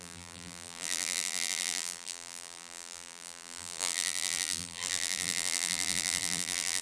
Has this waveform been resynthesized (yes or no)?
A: yes